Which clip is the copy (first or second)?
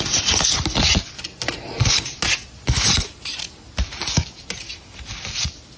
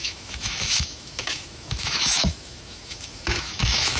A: second